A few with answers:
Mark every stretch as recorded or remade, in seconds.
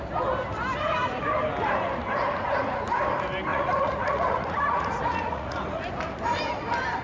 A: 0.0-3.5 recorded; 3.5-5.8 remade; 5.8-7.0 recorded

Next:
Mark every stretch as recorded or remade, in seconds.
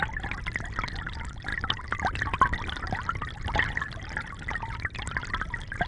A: 0.0-5.9 recorded